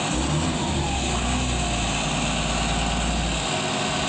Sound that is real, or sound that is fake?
real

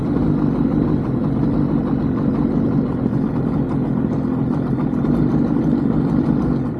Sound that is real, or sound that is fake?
real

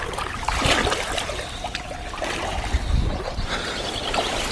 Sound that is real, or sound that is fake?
real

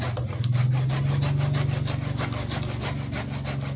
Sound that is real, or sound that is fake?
real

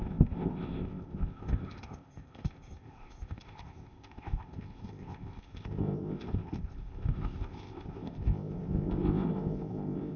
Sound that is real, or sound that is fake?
fake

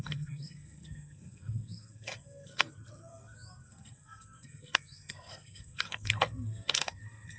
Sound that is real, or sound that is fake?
fake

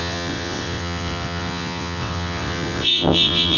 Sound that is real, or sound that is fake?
fake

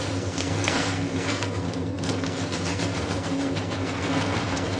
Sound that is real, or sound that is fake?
fake